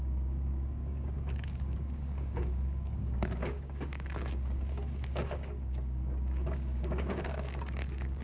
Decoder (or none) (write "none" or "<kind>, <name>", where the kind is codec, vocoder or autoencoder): codec, DAC